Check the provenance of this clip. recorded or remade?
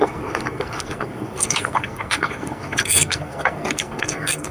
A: remade